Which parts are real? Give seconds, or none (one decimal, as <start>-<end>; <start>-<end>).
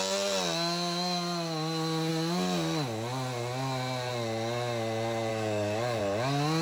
0.0-5.3; 6.0-6.6